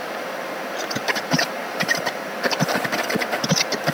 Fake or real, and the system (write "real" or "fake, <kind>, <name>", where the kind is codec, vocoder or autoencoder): fake, vocoder, BigVGAN v2